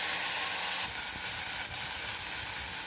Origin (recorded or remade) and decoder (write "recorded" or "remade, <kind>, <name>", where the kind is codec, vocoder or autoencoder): recorded